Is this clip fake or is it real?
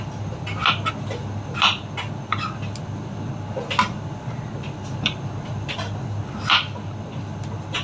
real